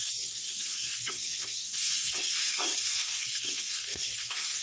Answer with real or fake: fake